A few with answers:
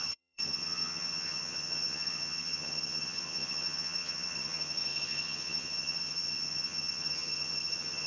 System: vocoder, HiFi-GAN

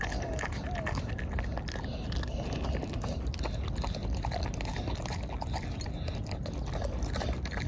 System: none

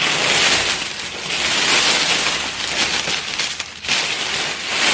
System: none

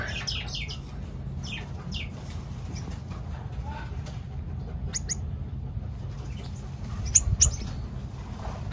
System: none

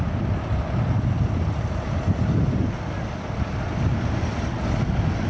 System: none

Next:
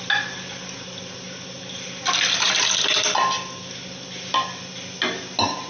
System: none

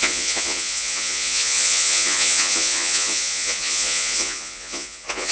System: vocoder, Vocos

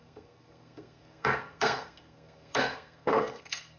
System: codec, SNAC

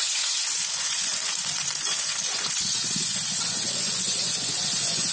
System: vocoder, Vocos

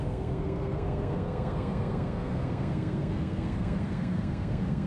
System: codec, SNAC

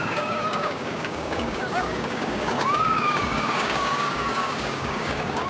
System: codec, DAC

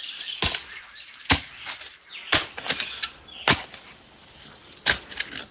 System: none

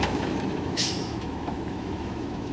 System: autoencoder, DAC-VAE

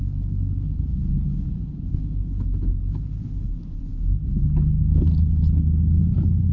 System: codec, HILCodec